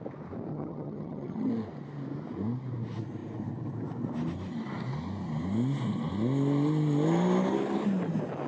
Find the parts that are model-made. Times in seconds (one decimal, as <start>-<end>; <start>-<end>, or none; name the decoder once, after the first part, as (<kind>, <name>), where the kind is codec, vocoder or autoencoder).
0.5-1.5 (vocoder, HiFi-GAN)